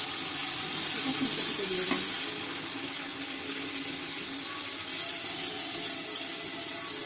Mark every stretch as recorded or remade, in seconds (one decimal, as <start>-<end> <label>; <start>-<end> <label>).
0.0-7.1 recorded